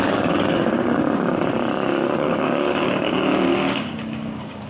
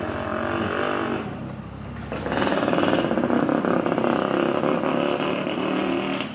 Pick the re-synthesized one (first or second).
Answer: first